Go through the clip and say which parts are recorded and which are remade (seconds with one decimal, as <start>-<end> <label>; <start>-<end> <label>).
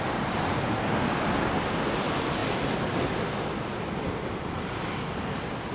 0.0-5.7 recorded